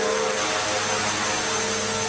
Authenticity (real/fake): real